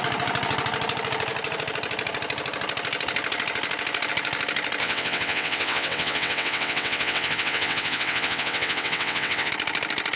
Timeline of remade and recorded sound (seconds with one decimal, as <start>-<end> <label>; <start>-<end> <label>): 0.0-4.8 recorded; 4.8-9.5 remade; 9.5-10.2 recorded

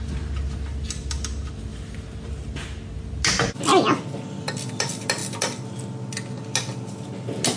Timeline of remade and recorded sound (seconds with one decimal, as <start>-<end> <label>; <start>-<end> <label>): 0.0-7.6 recorded

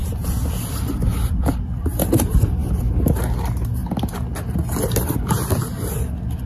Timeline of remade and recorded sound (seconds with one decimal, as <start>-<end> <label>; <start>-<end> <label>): 0.0-6.5 recorded

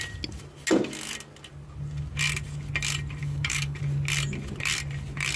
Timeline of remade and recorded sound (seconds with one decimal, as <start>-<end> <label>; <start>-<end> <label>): 0.0-3.2 recorded; 3.2-3.8 remade; 3.8-5.4 recorded

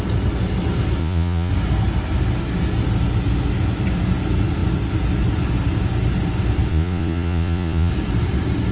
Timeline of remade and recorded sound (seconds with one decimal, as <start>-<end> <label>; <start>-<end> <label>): 0.0-1.0 recorded; 1.0-1.5 remade; 1.5-6.7 recorded; 6.7-7.9 remade; 7.9-8.7 recorded

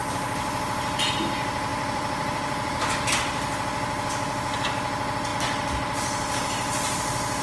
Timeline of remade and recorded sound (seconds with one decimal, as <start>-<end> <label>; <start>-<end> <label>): 0.0-1.7 recorded; 1.7-3.2 remade; 3.2-7.4 recorded

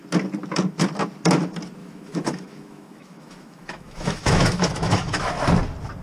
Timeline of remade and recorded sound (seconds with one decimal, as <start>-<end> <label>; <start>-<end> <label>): 0.0-1.8 recorded; 1.8-5.3 remade; 5.3-6.0 recorded